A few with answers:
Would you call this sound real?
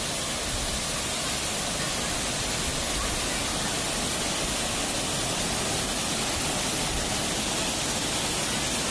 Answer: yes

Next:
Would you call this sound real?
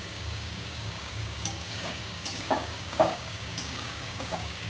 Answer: no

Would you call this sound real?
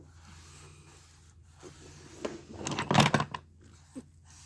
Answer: yes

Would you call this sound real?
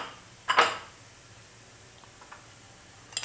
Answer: yes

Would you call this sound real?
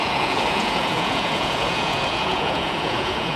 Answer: no